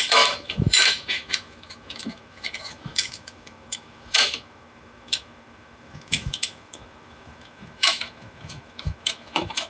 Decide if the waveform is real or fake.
fake